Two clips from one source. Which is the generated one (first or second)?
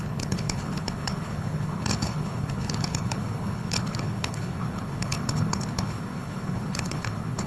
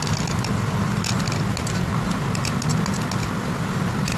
first